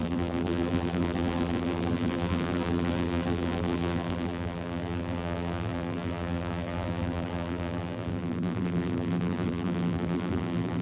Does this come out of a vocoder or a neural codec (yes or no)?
yes